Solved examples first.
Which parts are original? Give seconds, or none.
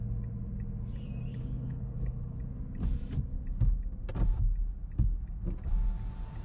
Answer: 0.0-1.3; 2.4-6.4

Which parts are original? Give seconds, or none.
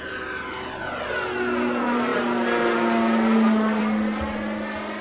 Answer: 0.0-5.0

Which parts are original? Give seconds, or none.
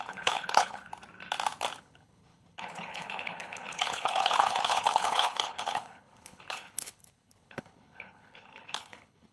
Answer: 0.9-1.8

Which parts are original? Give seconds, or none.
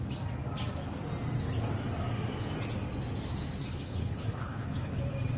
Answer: 0.0-3.7; 5.0-5.4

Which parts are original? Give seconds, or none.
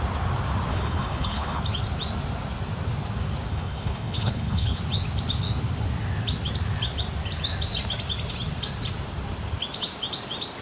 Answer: 0.0-0.7; 1.6-3.5; 4.8-10.6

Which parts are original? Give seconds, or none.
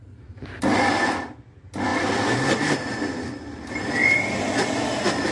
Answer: 0.0-5.3